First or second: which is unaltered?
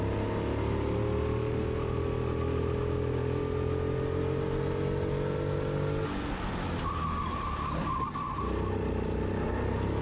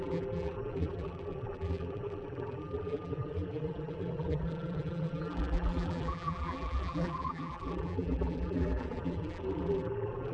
first